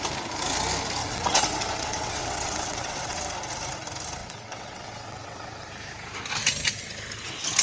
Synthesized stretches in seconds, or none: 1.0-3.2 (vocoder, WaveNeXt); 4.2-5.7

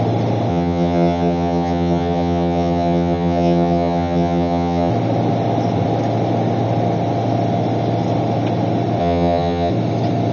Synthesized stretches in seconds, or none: 0.5-4.9 (vocoder, HiFi-GAN); 9.0-9.7

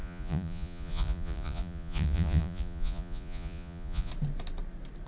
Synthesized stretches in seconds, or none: 0.0-4.1 (vocoder, Vocos)

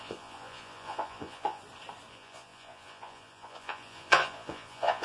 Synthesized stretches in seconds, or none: 0.0-1.6 (vocoder, Vocos); 2.1-5.0

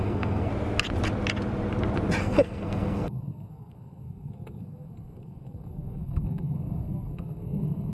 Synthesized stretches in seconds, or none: 0.0-0.5 (codec, SNAC); 2.2-7.9

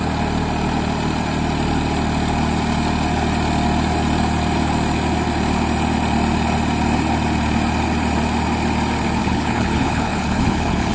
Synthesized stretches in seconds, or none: 9.2-10.9 (codec, HILCodec)